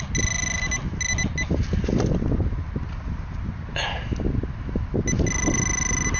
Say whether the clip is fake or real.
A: real